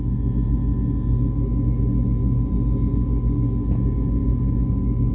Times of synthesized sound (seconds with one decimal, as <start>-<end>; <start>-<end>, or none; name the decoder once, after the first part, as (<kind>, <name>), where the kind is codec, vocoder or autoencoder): none